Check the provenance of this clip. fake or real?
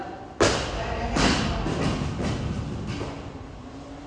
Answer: real